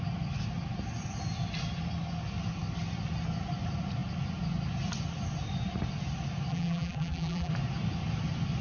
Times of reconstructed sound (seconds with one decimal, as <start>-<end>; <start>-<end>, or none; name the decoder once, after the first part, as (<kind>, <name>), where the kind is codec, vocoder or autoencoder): 6.5-7.5 (vocoder, BigVGAN v2)